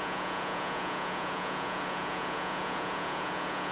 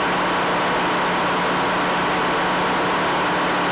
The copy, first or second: first